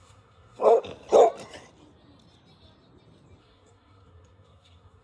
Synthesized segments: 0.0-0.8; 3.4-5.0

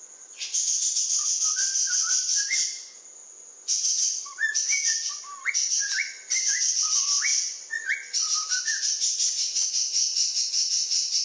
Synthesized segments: 0.0-11.2

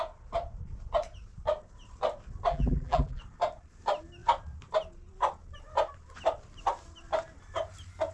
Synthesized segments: 2.5-3.2

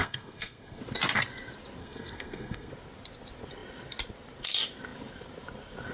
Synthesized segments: 0.0-0.8; 1.8-2.7

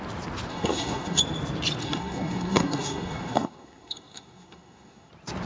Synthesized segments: 0.5-1.2; 1.8-5.1

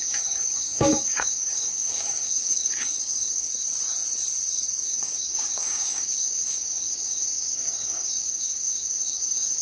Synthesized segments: 0.0-3.5; 4.8-9.6